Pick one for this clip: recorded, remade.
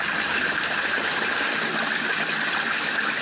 remade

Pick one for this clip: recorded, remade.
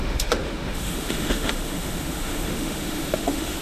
remade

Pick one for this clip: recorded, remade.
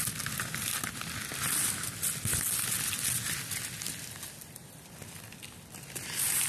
recorded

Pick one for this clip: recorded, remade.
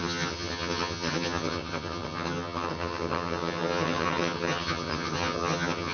remade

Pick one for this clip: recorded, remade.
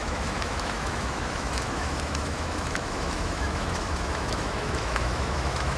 remade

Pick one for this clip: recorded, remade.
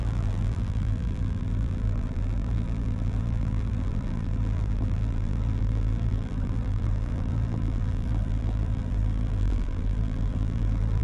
remade